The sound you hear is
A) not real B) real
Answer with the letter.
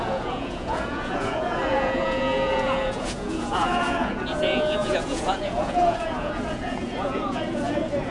A